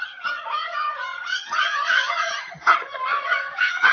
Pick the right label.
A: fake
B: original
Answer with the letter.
A